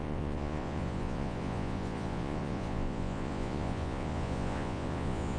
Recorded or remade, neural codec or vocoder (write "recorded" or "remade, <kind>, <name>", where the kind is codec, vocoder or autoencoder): remade, vocoder, Vocos